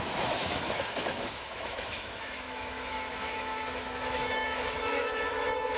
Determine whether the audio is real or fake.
fake